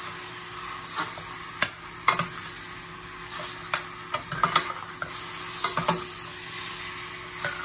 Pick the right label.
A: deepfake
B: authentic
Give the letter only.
B